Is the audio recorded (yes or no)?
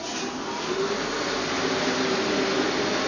yes